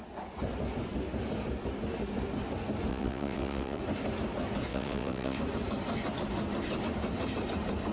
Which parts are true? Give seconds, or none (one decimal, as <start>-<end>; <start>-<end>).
0.0-2.9; 3.8-4.7; 5.4-7.9